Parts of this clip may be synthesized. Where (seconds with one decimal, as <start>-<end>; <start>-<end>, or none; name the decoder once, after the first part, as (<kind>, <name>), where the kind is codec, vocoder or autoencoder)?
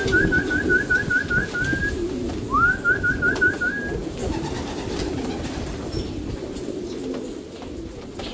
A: none